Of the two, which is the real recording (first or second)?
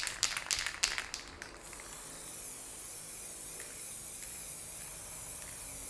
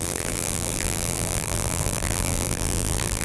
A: first